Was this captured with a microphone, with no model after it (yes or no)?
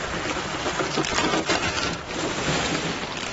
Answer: yes